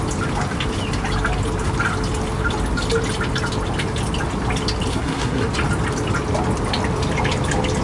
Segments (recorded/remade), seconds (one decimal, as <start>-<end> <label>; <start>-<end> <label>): 0.0-4.9 recorded; 4.9-5.4 remade; 5.4-7.8 recorded